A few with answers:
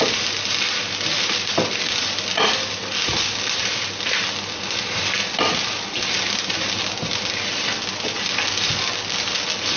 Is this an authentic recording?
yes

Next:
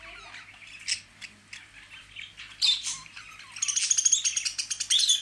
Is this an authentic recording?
yes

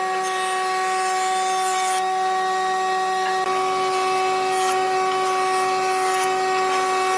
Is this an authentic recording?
yes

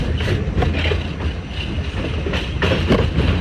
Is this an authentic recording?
yes